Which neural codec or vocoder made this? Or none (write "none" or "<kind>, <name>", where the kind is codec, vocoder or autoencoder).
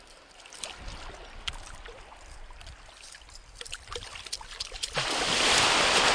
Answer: none